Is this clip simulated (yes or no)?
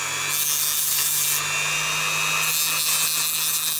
no